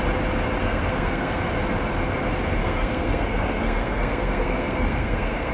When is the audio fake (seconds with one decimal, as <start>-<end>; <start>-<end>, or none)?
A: 0.6-1.4; 2.6-5.5